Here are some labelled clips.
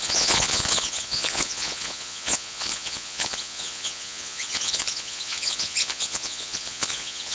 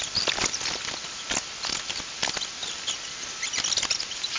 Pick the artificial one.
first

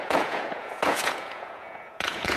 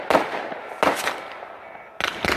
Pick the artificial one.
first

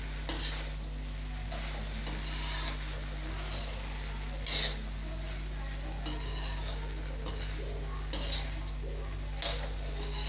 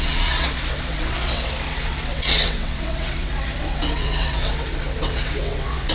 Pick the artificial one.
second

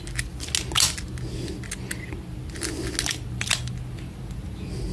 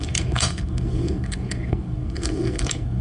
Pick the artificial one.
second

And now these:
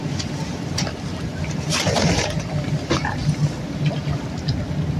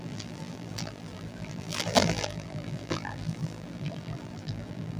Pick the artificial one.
second